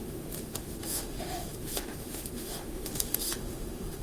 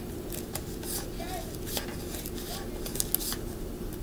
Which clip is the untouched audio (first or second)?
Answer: second